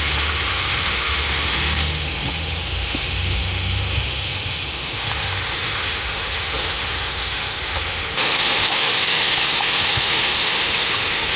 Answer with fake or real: fake